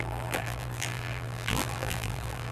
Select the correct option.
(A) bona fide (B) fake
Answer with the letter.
B